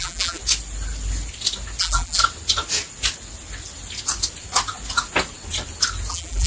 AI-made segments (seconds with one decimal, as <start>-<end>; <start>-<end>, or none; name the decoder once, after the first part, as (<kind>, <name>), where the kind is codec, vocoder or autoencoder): 0.0-0.4 (vocoder, BigVGAN v2); 1.8-2.2; 6.1-6.5